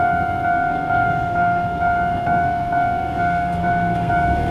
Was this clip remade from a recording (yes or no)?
yes